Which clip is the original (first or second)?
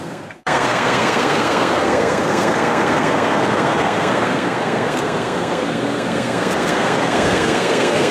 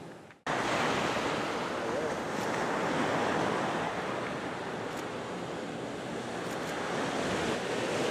second